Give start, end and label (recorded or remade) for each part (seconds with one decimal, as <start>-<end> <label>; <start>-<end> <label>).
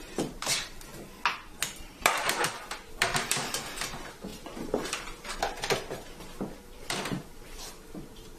0.0-0.9 remade; 0.9-1.7 recorded; 1.7-4.3 remade; 4.3-5.4 recorded; 5.4-8.4 remade